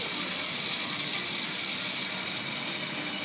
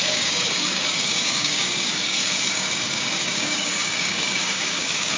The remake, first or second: second